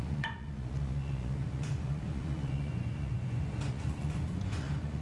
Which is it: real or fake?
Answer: fake